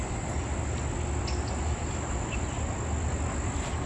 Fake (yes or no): no